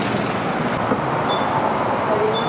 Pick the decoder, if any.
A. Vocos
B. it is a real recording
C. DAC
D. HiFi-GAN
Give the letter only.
B